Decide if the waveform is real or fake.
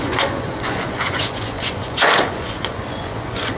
fake